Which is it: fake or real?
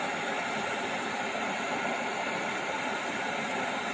fake